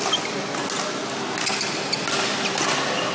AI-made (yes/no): no